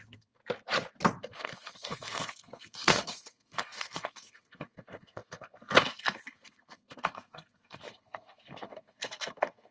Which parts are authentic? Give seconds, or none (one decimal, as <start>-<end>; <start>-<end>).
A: 0.4-1.2